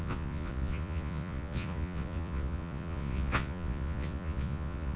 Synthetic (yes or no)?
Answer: yes